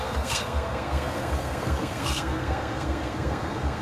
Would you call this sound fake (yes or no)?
yes